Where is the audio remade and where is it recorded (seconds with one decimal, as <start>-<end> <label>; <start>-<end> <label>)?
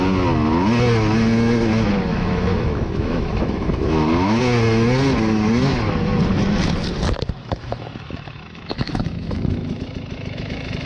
0.0-2.1 recorded; 2.1-4.4 remade; 4.4-7.4 recorded; 7.4-10.9 remade